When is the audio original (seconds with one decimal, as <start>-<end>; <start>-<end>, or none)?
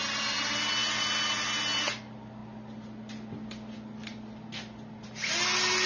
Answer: 0.0-5.9